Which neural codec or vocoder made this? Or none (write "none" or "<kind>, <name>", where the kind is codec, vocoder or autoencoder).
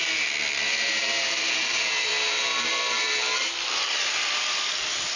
vocoder, BigVGAN v2